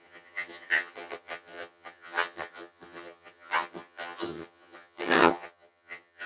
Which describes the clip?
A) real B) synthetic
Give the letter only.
B